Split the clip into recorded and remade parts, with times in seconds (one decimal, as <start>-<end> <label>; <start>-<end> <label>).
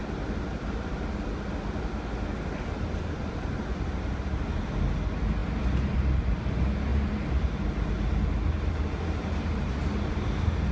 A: 0.0-10.7 recorded